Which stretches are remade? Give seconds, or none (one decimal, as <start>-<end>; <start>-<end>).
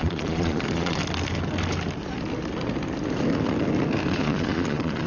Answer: 0.0-1.0; 4.1-5.1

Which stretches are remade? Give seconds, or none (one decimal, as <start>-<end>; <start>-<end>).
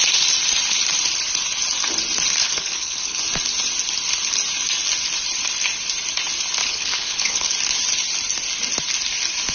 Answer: 2.4-3.2; 6.6-7.5